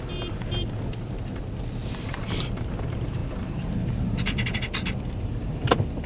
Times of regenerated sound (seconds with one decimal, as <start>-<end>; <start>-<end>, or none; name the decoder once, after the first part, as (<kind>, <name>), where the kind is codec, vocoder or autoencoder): 3.2-6.1 (vocoder, BigVGAN v2)

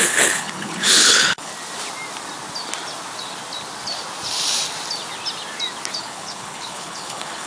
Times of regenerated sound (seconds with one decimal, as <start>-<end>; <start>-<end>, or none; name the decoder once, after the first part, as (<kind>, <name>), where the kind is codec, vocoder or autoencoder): 0.0-1.5 (codec, HILCodec); 6.0-7.5